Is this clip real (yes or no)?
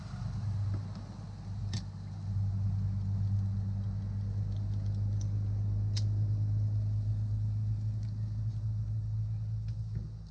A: yes